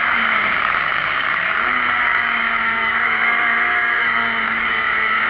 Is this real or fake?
fake